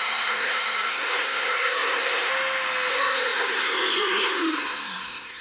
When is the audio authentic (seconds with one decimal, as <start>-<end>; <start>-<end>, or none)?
2.3-2.9